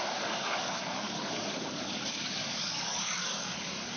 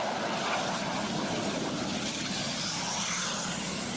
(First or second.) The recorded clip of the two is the second